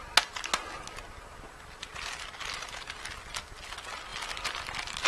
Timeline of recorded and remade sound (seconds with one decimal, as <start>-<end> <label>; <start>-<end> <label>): 0.0-5.1 recorded